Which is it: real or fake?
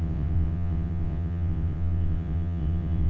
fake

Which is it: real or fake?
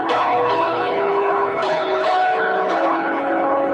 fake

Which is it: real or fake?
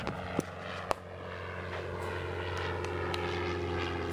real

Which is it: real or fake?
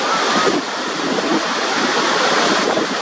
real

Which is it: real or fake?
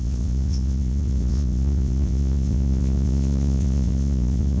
fake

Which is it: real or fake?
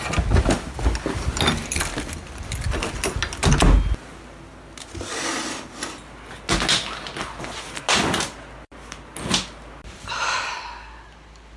real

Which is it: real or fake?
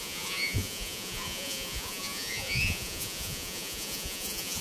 fake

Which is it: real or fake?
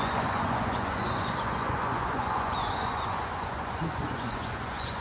fake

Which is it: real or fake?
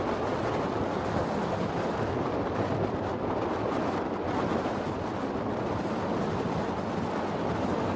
real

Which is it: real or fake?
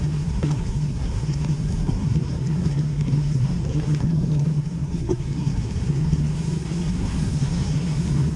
fake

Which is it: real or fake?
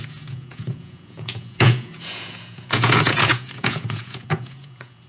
fake